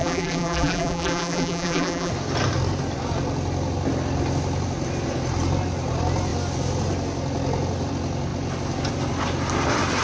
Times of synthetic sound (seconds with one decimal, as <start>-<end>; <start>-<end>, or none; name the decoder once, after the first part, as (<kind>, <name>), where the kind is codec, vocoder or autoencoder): 0.0-2.1 (vocoder, BigVGAN v2)